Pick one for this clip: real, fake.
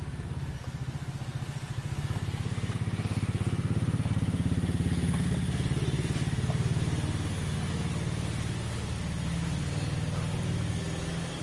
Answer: real